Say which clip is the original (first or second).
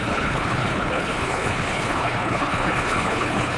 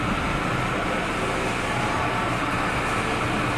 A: second